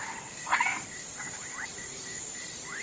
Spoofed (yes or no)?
yes